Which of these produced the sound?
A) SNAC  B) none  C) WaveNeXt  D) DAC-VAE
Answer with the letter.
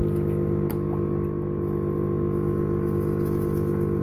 B